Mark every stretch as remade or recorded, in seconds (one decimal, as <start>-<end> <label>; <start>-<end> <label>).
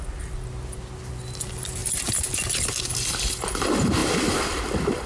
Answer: 0.0-1.8 recorded; 1.8-2.9 remade; 2.9-4.0 recorded; 4.0-5.1 remade